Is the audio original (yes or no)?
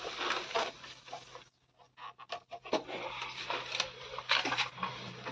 yes